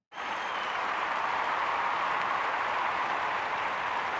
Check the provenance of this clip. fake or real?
fake